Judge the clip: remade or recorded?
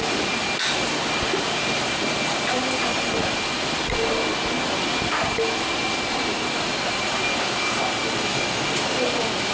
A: recorded